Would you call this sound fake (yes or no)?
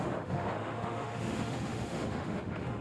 yes